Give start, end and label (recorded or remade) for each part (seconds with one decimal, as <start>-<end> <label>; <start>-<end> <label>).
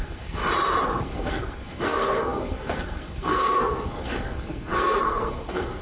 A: 0.0-0.4 remade; 0.4-1.0 recorded; 1.0-5.8 remade